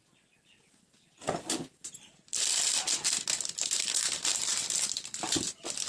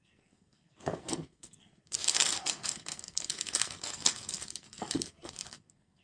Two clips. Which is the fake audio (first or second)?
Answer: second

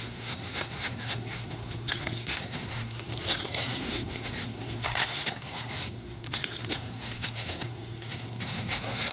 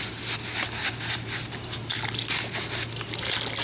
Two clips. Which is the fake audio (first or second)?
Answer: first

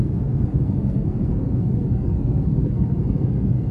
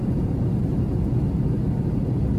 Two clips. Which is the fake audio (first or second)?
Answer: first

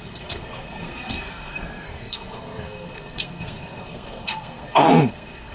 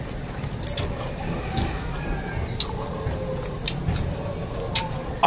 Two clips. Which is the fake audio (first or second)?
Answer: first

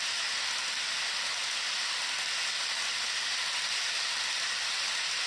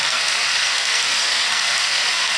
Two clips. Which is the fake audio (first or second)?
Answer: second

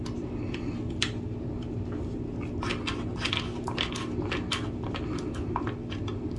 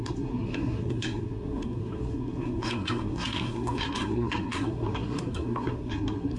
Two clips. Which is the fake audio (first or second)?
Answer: second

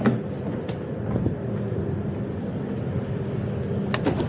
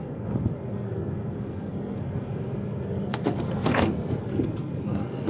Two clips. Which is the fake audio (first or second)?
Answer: second